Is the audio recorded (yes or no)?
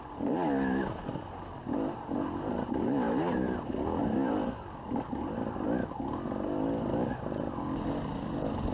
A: yes